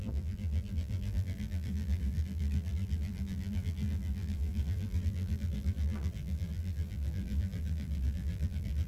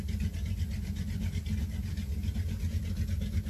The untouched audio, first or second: second